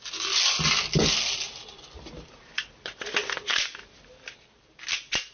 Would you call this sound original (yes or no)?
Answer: yes